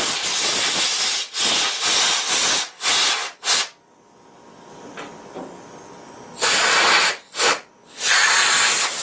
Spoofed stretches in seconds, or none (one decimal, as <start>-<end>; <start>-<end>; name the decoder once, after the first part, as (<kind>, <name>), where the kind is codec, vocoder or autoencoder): none